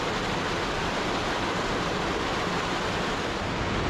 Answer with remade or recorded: recorded